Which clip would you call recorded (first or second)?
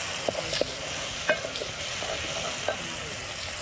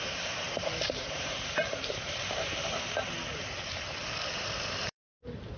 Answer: first